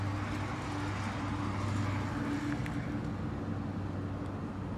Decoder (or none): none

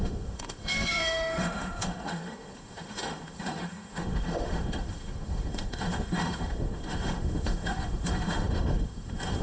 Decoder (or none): autoencoder, DAC-VAE